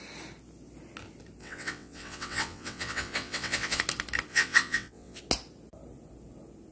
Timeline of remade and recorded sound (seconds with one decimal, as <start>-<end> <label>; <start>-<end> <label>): 0.0-1.4 recorded; 1.4-3.8 remade; 3.8-4.3 recorded; 4.3-5.2 remade; 5.2-6.7 recorded